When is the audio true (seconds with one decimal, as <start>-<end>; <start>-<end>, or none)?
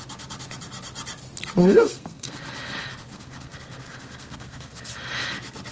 0.0-1.6; 2.4-3.1; 4.9-5.7